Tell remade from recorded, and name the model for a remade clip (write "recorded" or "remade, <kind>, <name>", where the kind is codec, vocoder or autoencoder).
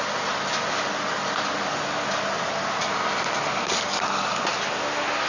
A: recorded